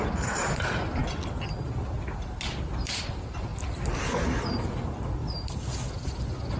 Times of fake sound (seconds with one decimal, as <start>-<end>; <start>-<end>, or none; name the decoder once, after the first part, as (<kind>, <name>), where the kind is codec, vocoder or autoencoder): none